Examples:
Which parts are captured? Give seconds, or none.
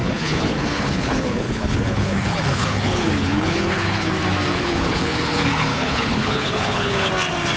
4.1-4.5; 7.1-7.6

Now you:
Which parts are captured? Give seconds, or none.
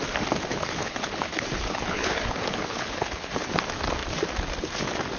0.0-0.5; 3.6-5.2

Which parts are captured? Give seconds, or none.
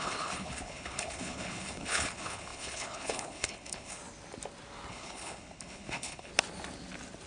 4.0-4.9; 6.3-7.3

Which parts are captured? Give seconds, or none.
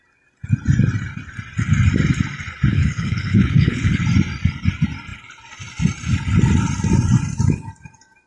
0.0-2.7; 4.0-8.3